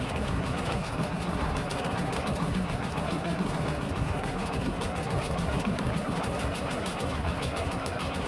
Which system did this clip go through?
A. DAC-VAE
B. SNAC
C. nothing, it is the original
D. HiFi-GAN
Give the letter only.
B